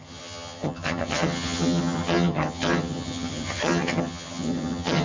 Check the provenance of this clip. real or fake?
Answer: fake